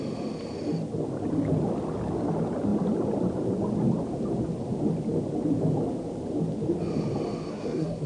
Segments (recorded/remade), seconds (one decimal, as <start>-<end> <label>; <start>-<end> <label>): 0.0-7.5 recorded; 7.5-8.1 remade